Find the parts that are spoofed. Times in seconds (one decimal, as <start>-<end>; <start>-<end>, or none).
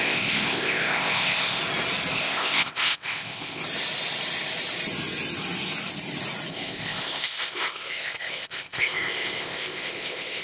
0.0-1.6; 2.1-3.6; 6.5-10.4